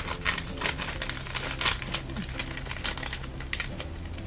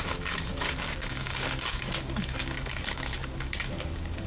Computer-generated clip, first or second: second